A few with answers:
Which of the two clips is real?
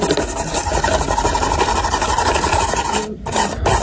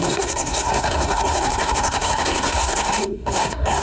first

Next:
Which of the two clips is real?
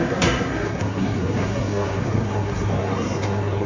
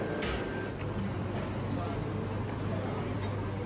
second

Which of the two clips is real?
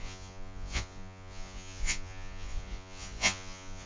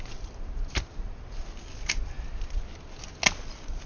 second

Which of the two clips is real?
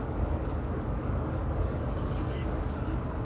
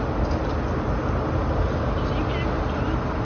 second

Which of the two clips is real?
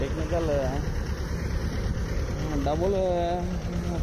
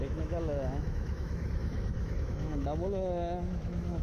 first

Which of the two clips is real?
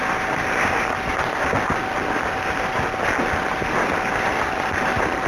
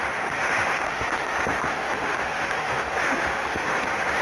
first